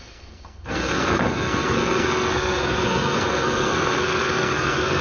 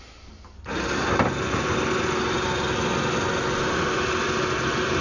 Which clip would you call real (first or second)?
second